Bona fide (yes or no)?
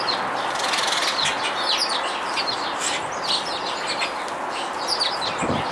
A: yes